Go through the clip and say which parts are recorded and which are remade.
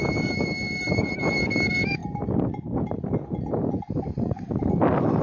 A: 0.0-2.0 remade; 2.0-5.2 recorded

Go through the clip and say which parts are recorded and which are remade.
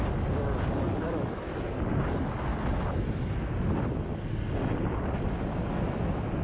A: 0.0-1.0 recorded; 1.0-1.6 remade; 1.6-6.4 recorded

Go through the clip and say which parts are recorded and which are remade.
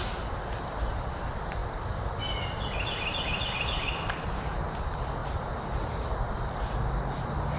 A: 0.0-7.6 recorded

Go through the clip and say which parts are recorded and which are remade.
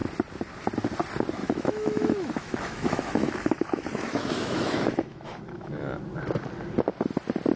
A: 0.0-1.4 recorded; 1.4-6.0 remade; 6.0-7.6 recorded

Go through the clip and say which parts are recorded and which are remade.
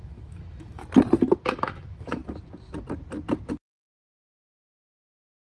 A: 0.0-0.8 remade; 0.8-1.6 recorded; 1.6-2.2 remade; 2.2-3.5 recorded; 3.5-5.5 remade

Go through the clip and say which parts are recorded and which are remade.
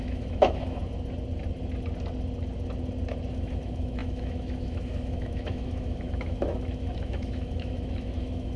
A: 0.0-0.8 remade; 0.8-3.3 recorded; 3.3-8.6 remade